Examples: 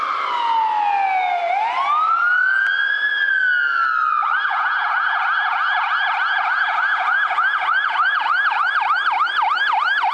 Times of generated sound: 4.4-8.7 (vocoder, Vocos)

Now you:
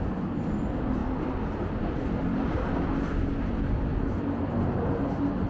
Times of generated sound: 2.3-2.9 (vocoder, BigVGAN v2)

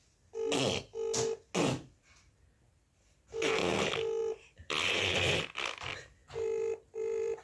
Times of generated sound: 1.6-3.6 (vocoder, BigVGAN v2); 4.2-7.4

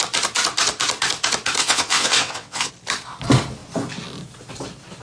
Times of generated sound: 1.6-2.7 (vocoder, WaveNeXt)